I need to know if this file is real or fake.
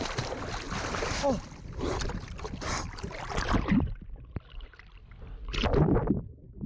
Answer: real